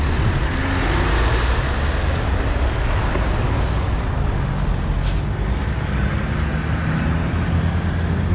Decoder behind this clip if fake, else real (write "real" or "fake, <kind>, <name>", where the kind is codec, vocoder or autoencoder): real